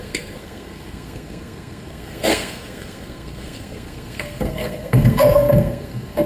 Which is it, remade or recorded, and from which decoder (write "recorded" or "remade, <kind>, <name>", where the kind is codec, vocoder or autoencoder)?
remade, codec, SNAC